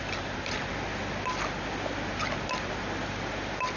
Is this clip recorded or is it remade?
recorded